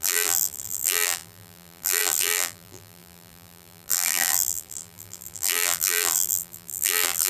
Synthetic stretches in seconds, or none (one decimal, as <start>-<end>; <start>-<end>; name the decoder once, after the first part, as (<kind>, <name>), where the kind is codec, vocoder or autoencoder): 0.0-7.3 (vocoder, BigVGAN v2)